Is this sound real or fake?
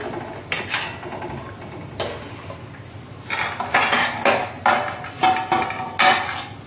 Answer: real